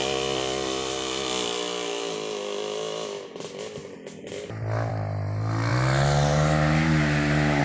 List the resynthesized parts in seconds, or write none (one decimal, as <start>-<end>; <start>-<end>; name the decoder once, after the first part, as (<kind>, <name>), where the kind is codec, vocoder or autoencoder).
none